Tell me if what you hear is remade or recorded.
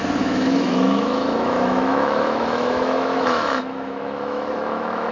remade